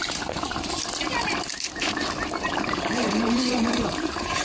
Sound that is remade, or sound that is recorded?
remade